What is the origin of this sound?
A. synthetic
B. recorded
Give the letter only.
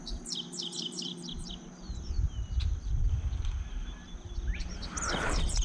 A